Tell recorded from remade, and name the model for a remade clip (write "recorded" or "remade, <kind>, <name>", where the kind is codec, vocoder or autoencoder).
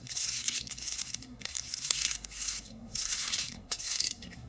remade, codec, SNAC